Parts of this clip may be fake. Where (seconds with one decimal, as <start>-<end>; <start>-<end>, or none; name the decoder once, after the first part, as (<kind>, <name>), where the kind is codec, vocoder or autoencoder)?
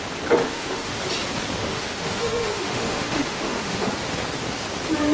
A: 0.4-1.0 (autoencoder, DAC-VAE); 1.6-3.9